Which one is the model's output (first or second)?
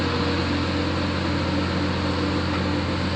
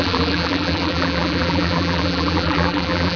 second